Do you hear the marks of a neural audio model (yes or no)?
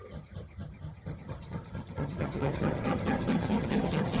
yes